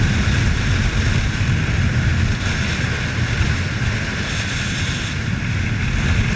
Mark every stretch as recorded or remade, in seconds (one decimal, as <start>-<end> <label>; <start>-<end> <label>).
0.0-6.4 recorded